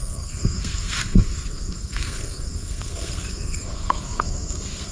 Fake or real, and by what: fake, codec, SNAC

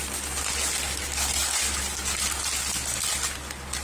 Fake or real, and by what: real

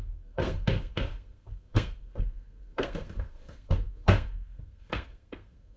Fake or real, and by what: fake, codec, SNAC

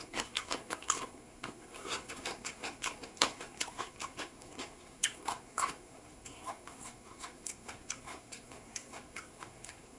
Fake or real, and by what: fake, codec, SNAC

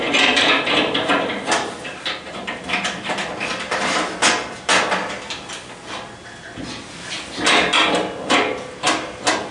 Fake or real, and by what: real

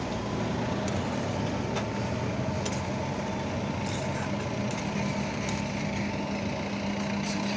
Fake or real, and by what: real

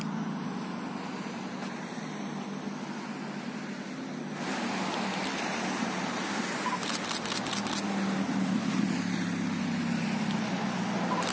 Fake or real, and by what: real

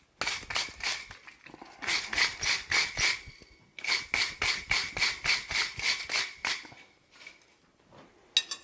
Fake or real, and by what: real